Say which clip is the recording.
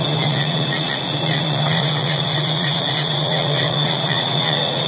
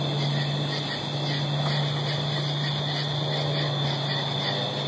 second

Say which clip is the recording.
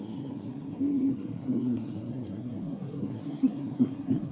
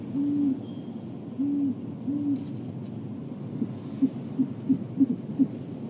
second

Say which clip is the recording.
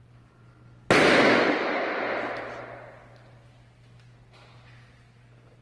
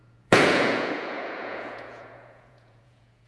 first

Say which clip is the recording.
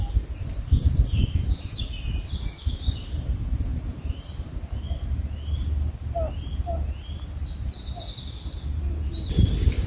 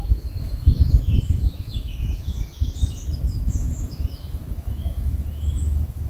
first